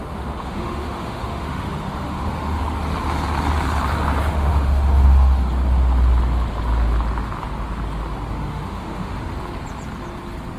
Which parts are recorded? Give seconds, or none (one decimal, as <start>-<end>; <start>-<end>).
2.6-4.3; 5.5-8.4; 9.3-10.6